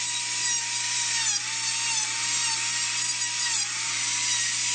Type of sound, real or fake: real